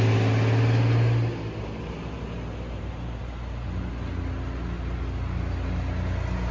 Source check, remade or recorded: recorded